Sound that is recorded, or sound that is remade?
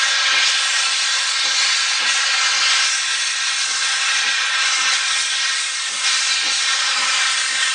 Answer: recorded